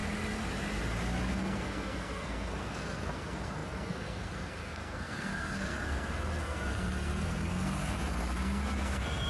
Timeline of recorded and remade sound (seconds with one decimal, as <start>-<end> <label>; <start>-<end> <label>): 0.0-1.3 recorded; 1.3-9.3 remade